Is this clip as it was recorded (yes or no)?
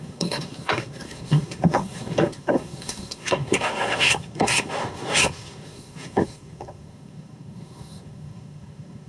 no